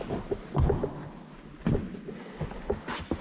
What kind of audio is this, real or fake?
real